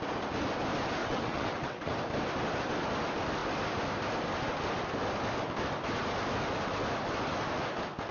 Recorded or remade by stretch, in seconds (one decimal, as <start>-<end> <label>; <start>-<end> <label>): 0.0-1.0 recorded; 1.0-1.9 remade; 1.9-8.1 recorded